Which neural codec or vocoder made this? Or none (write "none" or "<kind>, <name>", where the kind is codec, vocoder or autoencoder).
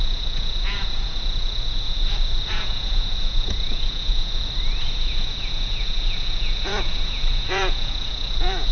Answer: vocoder, Vocos